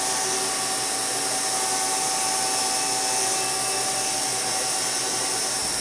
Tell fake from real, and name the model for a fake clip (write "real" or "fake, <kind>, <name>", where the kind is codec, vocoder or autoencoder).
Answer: real